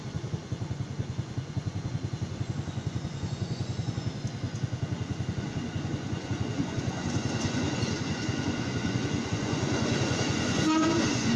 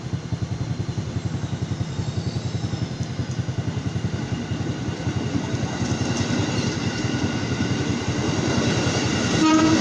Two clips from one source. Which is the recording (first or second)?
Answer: second